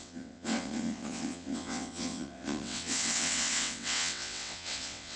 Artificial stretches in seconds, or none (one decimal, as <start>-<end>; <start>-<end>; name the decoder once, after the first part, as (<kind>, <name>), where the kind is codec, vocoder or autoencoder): 0.0-5.2 (vocoder, WaveNeXt)